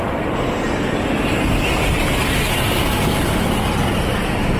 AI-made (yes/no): no